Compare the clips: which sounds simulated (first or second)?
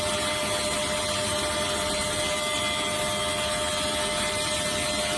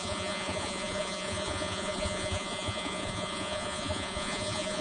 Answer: second